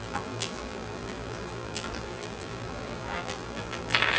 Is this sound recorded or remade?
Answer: remade